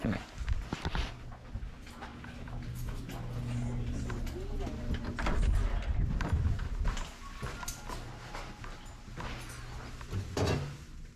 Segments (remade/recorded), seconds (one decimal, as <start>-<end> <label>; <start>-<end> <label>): 0.0-11.2 recorded